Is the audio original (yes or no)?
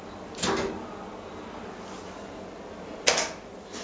yes